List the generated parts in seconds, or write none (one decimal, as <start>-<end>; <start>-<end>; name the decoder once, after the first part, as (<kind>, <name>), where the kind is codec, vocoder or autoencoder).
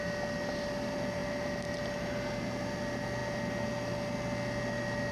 none